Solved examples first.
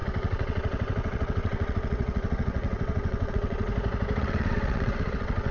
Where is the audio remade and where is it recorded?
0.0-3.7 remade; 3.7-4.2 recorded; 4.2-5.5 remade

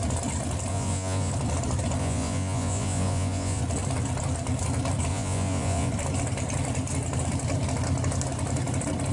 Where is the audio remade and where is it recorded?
0.0-0.7 recorded; 0.7-1.3 remade; 1.3-2.0 recorded; 2.0-3.6 remade; 3.6-5.1 recorded; 5.1-5.9 remade; 5.9-9.1 recorded

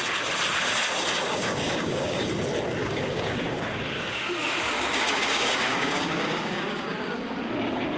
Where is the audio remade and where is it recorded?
0.0-1.3 recorded; 1.3-2.3 remade; 2.3-2.8 recorded; 2.8-7.5 remade; 7.5-8.0 recorded

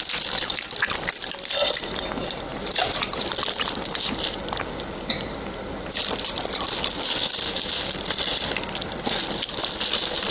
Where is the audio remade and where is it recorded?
0.0-2.5 recorded; 2.5-3.3 remade; 3.3-10.3 recorded